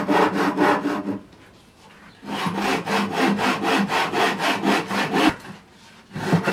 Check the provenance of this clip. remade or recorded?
recorded